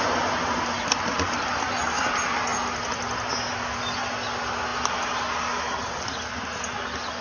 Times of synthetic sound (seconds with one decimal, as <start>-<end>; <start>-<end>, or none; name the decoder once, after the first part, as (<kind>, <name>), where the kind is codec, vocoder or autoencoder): none